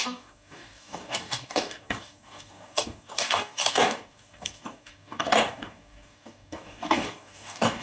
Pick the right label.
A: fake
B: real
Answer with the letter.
A